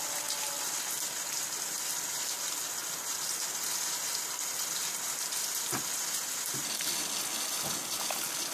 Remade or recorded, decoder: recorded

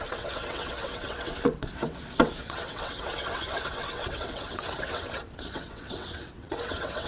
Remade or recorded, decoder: remade, vocoder, WaveNeXt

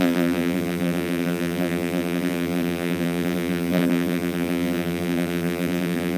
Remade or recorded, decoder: remade, vocoder, BigVGAN v2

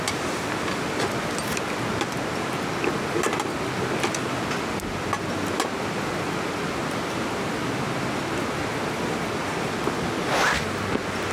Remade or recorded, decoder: recorded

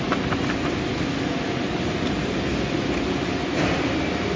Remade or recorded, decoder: recorded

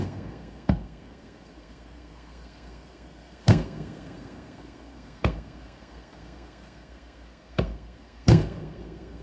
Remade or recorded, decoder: remade, codec, SNAC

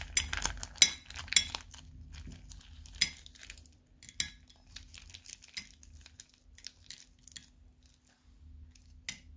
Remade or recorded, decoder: recorded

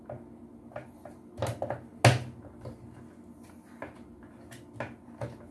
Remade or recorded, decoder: recorded